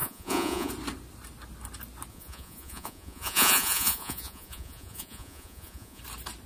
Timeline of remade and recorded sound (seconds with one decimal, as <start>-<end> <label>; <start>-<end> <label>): 0.0-0.7 remade; 0.7-2.1 recorded; 2.1-6.0 remade; 6.0-6.5 recorded